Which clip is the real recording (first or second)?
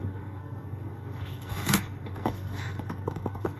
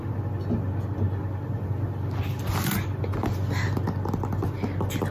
second